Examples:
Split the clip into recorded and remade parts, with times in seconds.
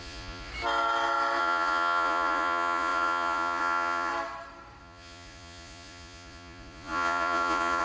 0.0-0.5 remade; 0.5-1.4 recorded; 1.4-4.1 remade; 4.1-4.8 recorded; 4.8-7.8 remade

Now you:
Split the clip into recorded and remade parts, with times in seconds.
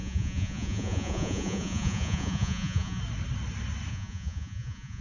0.0-3.0 remade; 3.0-3.9 recorded; 3.9-5.0 remade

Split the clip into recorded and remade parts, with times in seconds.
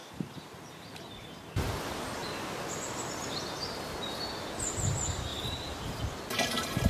0.0-5.3 recorded; 5.3-6.0 remade; 6.0-6.9 recorded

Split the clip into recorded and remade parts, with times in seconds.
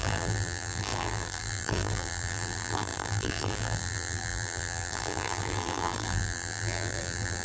0.0-7.4 remade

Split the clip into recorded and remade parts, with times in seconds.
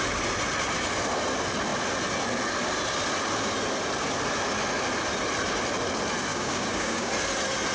0.0-6.3 recorded; 6.3-7.1 remade; 7.1-7.7 recorded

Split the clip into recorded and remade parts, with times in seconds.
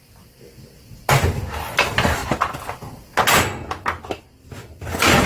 0.0-5.3 recorded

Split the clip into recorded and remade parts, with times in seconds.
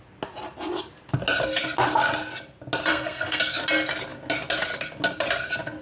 0.0-2.9 recorded; 2.9-3.4 remade; 3.4-5.8 recorded